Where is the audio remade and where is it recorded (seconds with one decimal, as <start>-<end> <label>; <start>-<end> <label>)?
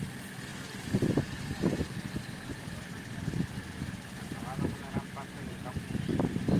0.0-0.5 recorded; 0.5-3.2 remade; 3.2-3.6 recorded; 3.6-5.6 remade; 5.6-6.6 recorded